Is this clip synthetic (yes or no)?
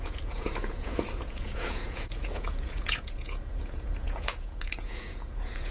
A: yes